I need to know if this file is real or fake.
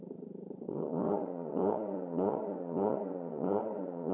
fake